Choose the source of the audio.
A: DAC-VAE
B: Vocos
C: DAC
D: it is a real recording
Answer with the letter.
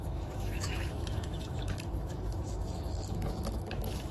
A